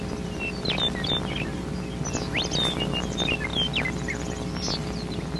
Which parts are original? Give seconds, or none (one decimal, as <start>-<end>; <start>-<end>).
0.0-5.4